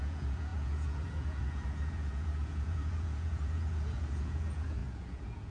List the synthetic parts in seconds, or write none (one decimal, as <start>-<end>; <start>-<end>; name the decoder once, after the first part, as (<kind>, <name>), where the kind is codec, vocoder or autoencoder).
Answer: 0.0-5.5 (vocoder, Vocos)